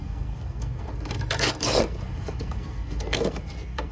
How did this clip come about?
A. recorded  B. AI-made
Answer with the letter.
B